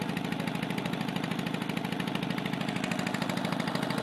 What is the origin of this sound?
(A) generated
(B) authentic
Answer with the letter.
B